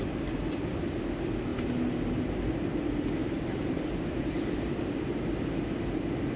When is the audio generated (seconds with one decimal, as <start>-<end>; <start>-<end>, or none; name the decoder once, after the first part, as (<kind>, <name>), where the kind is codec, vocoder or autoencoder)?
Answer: 3.2-5.2 (vocoder, BigVGAN v2)